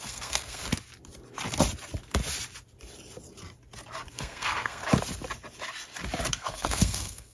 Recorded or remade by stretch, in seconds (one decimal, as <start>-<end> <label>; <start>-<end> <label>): 0.0-0.6 remade; 0.6-4.1 recorded; 4.1-4.8 remade; 4.8-6.3 recorded; 6.3-7.3 remade